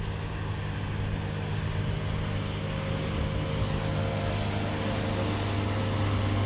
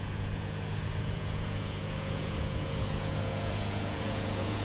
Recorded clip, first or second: first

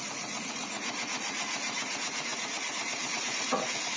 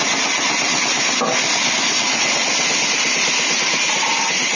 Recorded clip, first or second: second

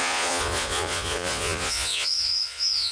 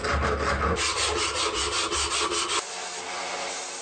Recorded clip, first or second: second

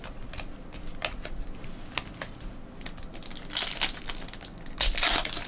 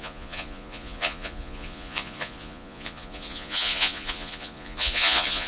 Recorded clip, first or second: first